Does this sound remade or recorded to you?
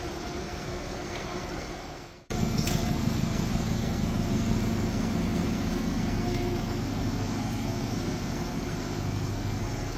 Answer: remade